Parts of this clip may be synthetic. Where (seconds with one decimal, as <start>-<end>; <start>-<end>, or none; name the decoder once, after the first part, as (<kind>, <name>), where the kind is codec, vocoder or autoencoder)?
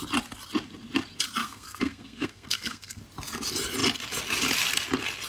1.4-3.0 (codec, SNAC)